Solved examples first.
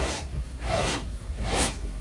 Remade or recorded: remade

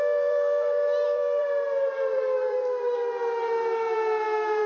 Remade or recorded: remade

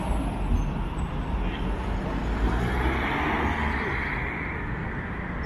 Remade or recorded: recorded